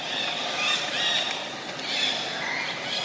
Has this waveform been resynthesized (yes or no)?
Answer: no